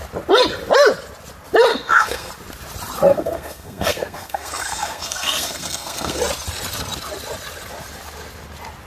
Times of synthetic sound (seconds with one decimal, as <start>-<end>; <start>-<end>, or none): 1.7-2.3; 3.1-6.2